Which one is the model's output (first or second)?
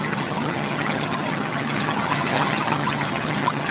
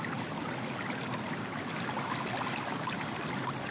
first